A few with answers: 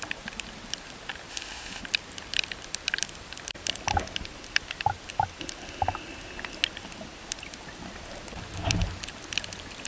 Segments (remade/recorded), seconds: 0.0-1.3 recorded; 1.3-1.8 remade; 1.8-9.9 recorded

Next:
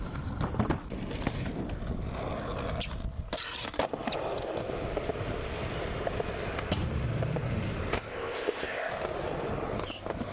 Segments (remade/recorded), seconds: 0.0-7.9 recorded; 7.9-8.9 remade; 8.9-10.3 recorded